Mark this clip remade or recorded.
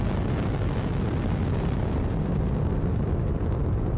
recorded